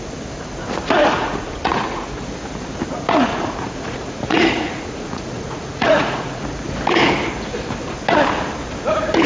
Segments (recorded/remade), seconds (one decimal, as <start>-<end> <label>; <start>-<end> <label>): 0.0-1.0 recorded; 1.0-2.2 remade; 2.2-3.3 recorded; 3.3-6.4 remade; 6.4-9.3 recorded